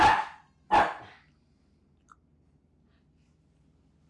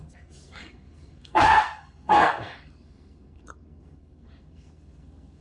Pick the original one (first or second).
first